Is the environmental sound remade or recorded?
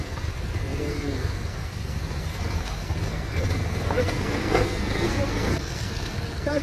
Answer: remade